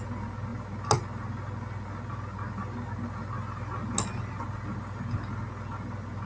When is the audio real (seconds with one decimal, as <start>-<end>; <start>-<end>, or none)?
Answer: 0.0-6.3